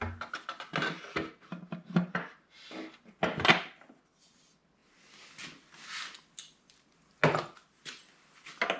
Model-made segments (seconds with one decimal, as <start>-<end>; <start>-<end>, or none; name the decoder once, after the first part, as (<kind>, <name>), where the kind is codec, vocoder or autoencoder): none